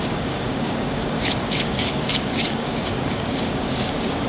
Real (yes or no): no